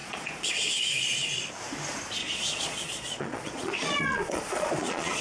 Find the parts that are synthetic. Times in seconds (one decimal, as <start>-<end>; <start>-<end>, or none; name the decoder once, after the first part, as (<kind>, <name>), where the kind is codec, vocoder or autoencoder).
0.0-0.7 (vocoder, Vocos); 2.2-5.2